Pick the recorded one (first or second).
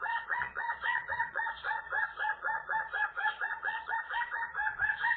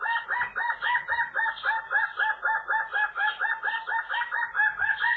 second